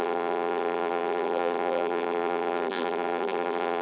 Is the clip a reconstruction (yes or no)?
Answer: yes